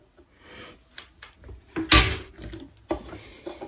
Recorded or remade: recorded